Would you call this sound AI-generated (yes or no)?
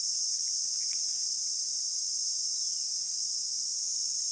yes